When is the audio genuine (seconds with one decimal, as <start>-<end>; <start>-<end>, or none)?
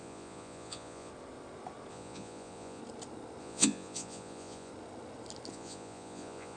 1.1-1.9; 2.8-3.4; 4.7-5.5